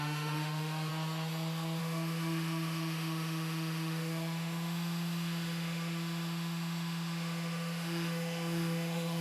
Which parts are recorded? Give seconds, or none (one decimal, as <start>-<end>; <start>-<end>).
0.9-1.8